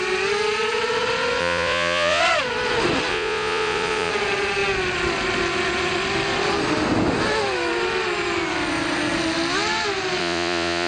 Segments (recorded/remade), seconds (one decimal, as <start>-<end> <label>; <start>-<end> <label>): 0.0-1.4 recorded; 1.4-2.2 remade; 2.2-3.1 recorded; 3.1-4.1 remade; 4.1-10.2 recorded; 10.2-10.9 remade